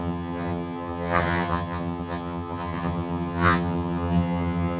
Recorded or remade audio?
remade